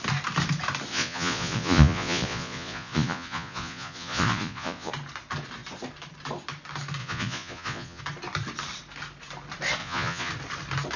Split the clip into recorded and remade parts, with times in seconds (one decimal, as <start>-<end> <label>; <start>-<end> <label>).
0.0-0.9 recorded; 0.9-4.9 remade; 4.9-7.0 recorded; 7.0-8.0 remade; 8.0-9.8 recorded; 9.8-10.3 remade; 10.3-11.0 recorded